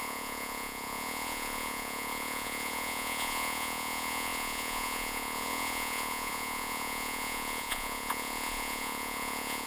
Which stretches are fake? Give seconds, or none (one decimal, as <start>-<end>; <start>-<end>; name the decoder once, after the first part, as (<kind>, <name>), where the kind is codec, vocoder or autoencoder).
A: 0.0-9.7 (vocoder, Vocos)